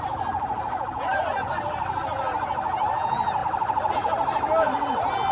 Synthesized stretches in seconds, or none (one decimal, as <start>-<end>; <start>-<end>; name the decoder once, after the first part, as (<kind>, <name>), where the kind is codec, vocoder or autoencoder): 1.1-2.0 (vocoder, BigVGAN v2)